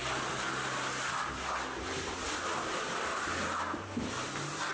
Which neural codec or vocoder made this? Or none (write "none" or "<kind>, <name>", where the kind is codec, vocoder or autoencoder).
none